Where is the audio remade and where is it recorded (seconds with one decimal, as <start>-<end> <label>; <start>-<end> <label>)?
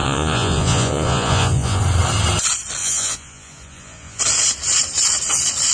0.0-1.8 remade; 1.8-2.8 recorded; 2.8-4.2 remade; 4.2-5.7 recorded